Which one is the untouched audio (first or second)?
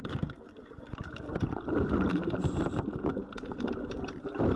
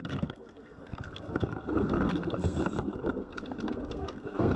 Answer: first